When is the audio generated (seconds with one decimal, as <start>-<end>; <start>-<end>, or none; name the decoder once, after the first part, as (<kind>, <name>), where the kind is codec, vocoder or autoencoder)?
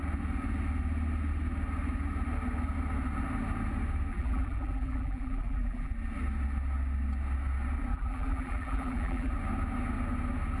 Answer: 4.1-5.9 (vocoder, BigVGAN v2); 7.9-9.3